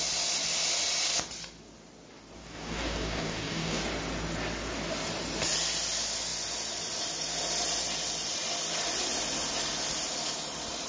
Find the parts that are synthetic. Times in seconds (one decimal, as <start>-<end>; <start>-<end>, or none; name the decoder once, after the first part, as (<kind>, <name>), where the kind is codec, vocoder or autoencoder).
2.4-3.8 (codec, DAC)